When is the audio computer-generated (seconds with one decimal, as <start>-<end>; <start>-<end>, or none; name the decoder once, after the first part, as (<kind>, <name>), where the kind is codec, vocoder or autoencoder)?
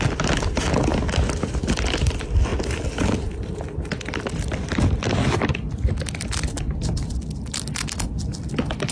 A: 0.9-1.6 (vocoder, BigVGAN v2); 2.5-5.5